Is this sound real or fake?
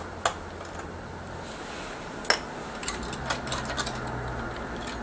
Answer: real